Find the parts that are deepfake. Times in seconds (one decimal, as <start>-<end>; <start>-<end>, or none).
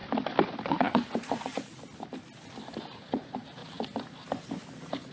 0.7-1.5; 2.8-3.6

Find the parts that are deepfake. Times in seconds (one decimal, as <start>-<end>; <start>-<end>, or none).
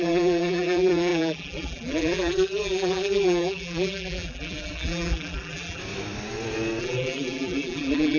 0.0-5.8; 6.8-8.2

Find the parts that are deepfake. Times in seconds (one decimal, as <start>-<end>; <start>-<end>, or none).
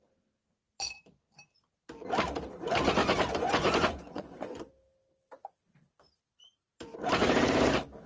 3.0-4.7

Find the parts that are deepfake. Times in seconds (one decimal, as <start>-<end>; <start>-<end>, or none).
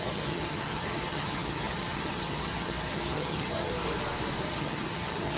0.0-3.7; 4.4-5.4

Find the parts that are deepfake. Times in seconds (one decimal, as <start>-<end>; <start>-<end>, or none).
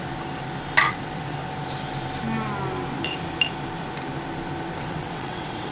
0.9-1.4; 4.8-5.7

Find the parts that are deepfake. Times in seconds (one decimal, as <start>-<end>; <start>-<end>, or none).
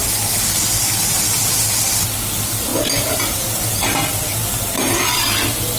none